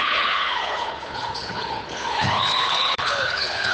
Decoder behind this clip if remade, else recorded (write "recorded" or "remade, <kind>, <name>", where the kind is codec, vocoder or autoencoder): remade, codec, HILCodec